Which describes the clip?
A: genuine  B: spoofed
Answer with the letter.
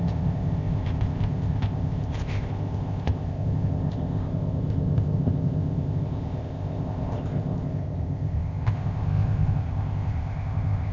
B